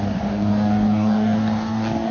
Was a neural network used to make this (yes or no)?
yes